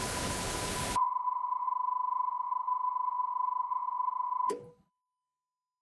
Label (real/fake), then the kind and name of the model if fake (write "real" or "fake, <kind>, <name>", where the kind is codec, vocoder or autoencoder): fake, codec, HILCodec